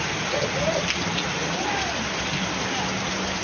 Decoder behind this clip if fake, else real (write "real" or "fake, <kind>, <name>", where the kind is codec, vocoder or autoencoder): real